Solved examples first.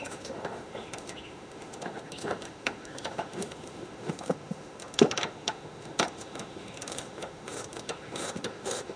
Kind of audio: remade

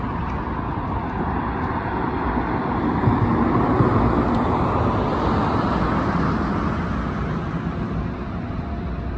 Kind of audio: recorded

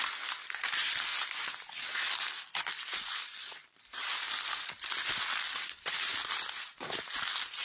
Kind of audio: recorded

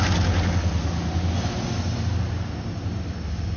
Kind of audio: recorded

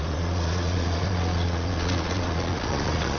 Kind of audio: remade